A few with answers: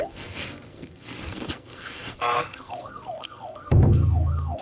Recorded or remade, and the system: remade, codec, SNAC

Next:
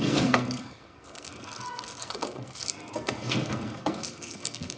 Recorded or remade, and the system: remade, codec, SNAC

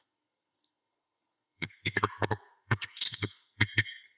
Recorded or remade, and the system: remade, codec, SNAC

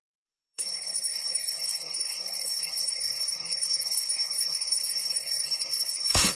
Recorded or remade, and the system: remade, codec, SNAC